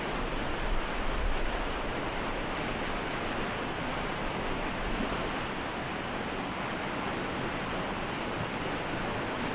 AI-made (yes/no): no